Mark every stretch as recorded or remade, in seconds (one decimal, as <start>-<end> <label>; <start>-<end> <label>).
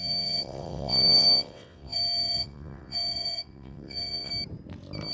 0.0-4.3 remade; 4.3-5.1 recorded